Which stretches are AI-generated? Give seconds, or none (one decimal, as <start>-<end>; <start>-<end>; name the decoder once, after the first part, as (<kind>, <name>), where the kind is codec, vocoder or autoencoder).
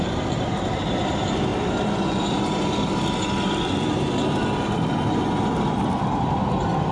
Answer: 0.0-1.5 (vocoder, BigVGAN v2); 4.7-6.9